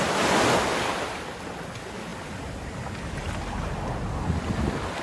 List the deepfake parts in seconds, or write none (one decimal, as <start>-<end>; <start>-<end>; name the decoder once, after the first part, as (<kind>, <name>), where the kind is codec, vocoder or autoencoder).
none